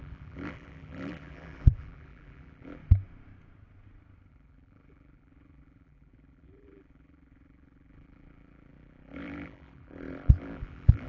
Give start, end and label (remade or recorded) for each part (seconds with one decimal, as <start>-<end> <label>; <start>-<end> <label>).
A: 0.0-2.8 remade; 2.8-4.3 recorded; 4.3-11.1 remade